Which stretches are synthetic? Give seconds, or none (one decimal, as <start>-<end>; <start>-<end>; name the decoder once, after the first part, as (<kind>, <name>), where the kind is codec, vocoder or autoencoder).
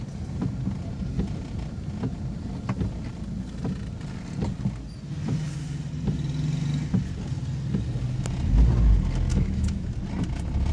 9.3-9.9 (autoencoder, DAC-VAE)